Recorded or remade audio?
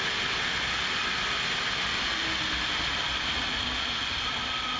recorded